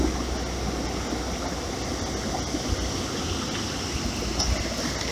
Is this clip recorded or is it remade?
recorded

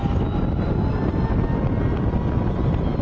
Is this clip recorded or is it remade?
recorded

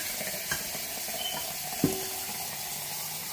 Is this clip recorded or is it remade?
recorded